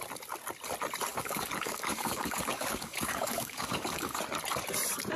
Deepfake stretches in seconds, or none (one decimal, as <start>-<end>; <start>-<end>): 1.1-4.2